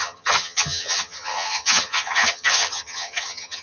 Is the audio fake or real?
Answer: fake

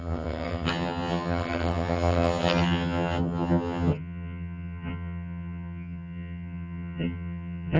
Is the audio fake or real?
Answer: fake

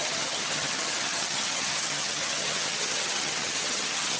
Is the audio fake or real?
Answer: fake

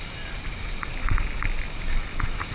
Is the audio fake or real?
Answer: real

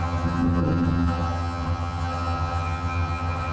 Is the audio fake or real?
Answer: fake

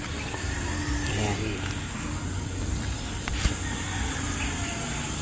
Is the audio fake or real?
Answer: real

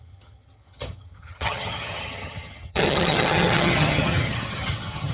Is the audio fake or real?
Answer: fake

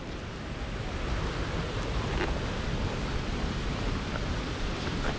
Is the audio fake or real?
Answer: real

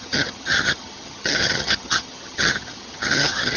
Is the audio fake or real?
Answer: fake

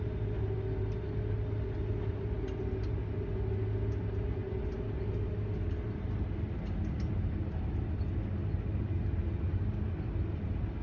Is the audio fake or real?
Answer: real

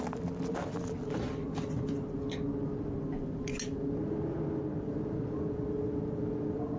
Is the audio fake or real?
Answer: real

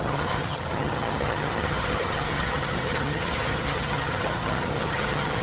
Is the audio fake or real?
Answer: fake